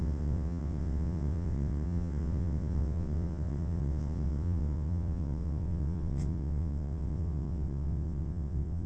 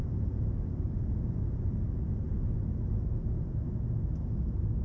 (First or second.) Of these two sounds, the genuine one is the second